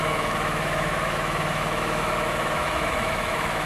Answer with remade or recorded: remade